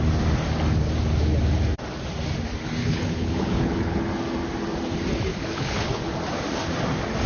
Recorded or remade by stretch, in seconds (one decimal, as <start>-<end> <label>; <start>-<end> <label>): 0.0-2.8 recorded; 2.8-4.0 remade; 4.0-5.3 recorded; 5.3-6.0 remade; 6.0-7.3 recorded